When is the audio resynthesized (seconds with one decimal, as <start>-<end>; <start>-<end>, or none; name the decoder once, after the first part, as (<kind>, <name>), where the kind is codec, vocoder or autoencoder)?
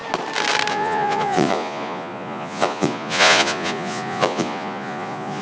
0.7-5.4 (vocoder, Vocos)